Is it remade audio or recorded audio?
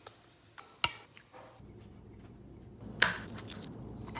recorded